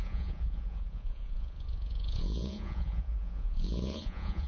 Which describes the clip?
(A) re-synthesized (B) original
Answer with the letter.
A